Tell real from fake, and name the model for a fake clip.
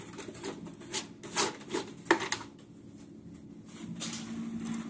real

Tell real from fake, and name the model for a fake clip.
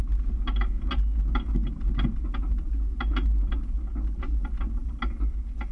real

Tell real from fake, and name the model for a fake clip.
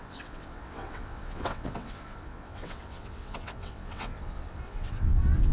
fake, vocoder, WaveNeXt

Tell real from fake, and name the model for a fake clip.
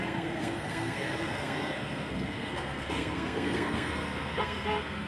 fake, codec, SNAC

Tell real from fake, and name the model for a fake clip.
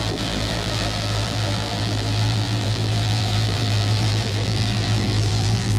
fake, vocoder, BigVGAN v2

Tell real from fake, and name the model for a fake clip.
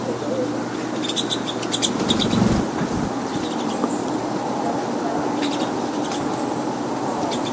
real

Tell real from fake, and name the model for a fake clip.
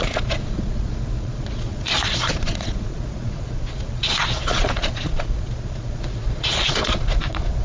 fake, vocoder, Vocos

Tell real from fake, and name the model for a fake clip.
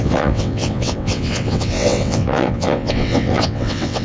fake, vocoder, WaveNeXt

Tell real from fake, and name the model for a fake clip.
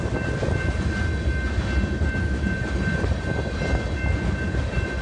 real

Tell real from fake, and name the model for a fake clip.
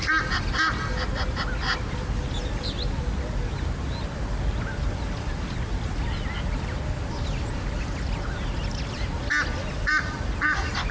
real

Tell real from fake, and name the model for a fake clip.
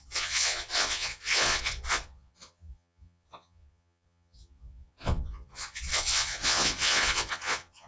fake, vocoder, Vocos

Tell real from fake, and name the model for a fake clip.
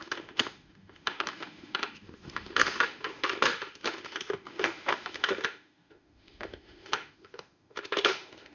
fake, autoencoder, DAC-VAE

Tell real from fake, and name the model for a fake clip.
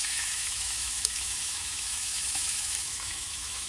fake, autoencoder, DAC-VAE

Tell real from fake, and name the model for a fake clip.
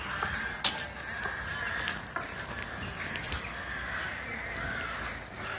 real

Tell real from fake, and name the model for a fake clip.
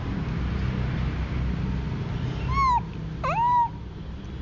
real